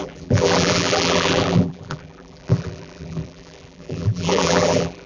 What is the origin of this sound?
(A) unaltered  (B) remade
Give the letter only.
B